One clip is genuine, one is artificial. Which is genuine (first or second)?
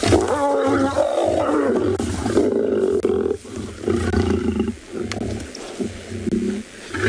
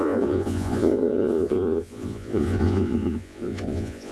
first